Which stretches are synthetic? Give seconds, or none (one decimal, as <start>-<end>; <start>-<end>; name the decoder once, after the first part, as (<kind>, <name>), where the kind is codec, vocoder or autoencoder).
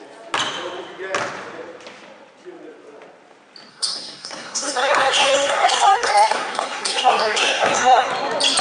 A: 3.7-8.1 (codec, SNAC)